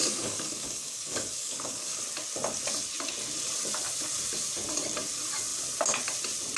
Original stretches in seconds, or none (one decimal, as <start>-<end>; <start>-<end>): 2.0-6.6